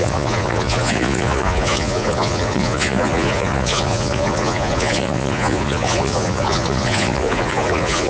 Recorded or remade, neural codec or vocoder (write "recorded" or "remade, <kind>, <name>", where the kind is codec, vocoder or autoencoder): remade, vocoder, Vocos